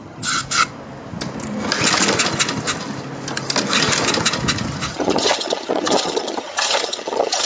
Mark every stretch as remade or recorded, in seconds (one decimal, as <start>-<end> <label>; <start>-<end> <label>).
0.0-0.4 remade; 0.4-4.9 recorded; 4.9-7.5 remade